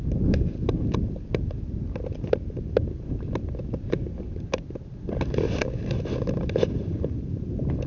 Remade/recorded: recorded